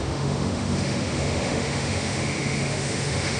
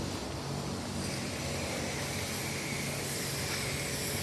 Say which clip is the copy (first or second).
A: first